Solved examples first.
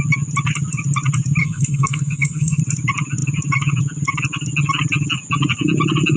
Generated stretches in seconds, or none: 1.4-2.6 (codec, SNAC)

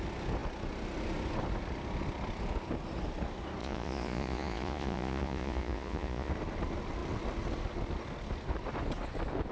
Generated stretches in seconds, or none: 3.6-6.3 (vocoder, Vocos)

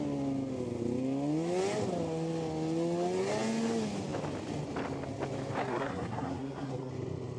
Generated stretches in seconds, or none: 5.6-6.9 (codec, SNAC)

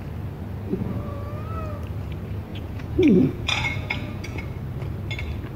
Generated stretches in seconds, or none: 0.7-1.2 (vocoder, Vocos); 2.5-4.4

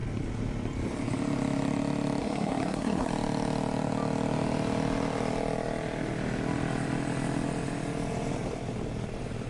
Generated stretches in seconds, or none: 2.2-3.1 (codec, SNAC)